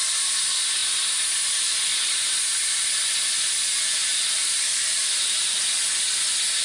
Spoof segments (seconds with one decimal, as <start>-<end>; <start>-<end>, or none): 4.0-5.6